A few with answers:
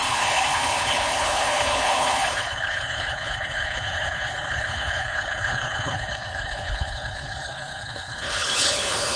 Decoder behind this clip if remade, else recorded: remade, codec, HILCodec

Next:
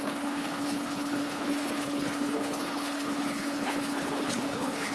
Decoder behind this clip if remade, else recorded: remade, codec, HILCodec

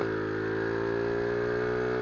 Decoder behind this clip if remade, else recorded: recorded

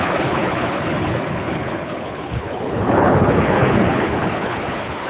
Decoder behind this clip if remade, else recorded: remade, codec, HILCodec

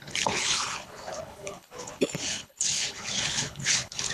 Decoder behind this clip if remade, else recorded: remade, codec, HILCodec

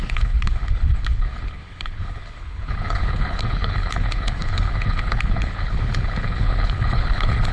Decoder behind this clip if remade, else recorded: remade, codec, HILCodec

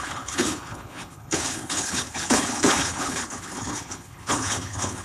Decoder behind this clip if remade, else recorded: remade, codec, HILCodec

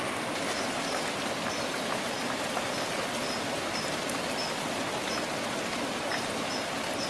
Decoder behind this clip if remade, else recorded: recorded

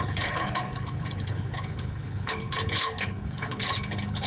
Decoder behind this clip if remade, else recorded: remade, codec, HILCodec